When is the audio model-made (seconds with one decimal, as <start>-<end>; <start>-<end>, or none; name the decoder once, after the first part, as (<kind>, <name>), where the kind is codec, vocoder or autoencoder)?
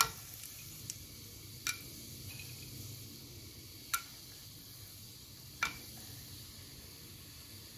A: none